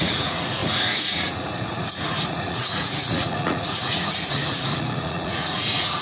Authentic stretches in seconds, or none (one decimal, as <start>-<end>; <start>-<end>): none